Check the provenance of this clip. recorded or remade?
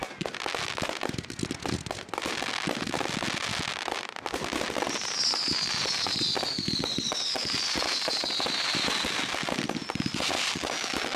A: recorded